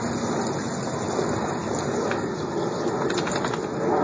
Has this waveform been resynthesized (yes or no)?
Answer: no